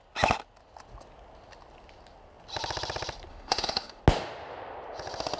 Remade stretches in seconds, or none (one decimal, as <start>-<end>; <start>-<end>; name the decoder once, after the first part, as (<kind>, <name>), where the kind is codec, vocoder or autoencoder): 3.3-4.0 (autoencoder, DAC-VAE)